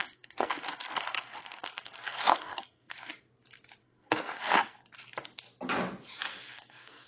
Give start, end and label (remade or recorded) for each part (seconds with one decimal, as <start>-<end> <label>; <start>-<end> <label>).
0.0-3.1 remade; 3.1-3.8 recorded; 3.8-4.8 remade; 4.8-6.3 recorded; 6.3-7.1 remade